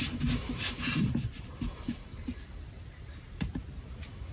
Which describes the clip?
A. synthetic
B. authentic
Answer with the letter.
A